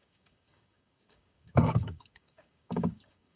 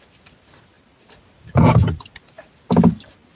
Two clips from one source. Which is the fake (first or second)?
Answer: first